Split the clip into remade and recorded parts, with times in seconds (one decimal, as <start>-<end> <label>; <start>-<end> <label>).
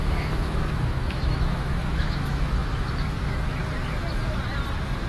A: 0.0-3.6 remade; 3.6-5.1 recorded